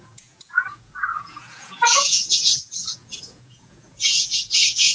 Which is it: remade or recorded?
remade